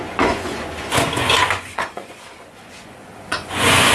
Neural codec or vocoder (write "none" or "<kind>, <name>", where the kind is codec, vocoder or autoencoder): vocoder, Vocos